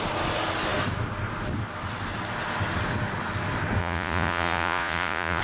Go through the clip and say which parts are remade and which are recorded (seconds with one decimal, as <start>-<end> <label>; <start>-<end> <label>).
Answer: 0.0-3.8 recorded; 3.8-5.4 remade